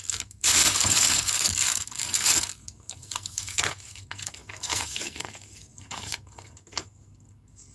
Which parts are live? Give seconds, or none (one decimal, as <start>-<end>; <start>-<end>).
none